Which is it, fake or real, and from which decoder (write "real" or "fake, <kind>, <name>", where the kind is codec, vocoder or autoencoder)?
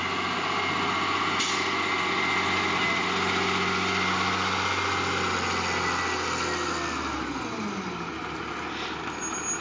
real